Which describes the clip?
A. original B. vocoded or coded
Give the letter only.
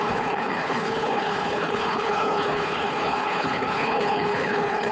B